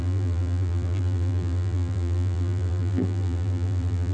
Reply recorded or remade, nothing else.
remade